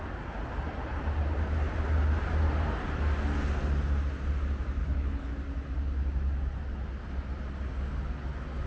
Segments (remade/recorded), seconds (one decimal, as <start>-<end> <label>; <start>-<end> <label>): 0.0-4.8 recorded; 4.8-5.3 remade; 5.3-8.7 recorded